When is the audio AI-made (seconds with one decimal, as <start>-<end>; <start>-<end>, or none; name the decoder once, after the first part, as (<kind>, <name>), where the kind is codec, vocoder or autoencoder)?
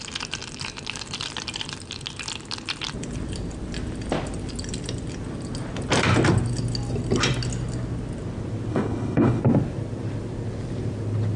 8.7-9.4 (codec, HILCodec)